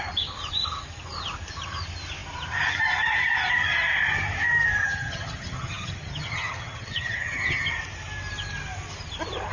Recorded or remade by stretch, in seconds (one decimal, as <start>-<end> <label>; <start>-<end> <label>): 0.0-4.8 recorded; 4.8-7.7 remade; 7.7-9.5 recorded